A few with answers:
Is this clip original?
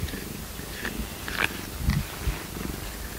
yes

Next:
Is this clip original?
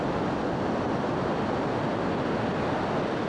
yes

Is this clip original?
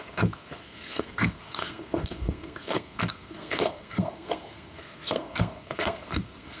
no